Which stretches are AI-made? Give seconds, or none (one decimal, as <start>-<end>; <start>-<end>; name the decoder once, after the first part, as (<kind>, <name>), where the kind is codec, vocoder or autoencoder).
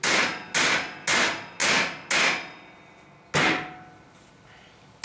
none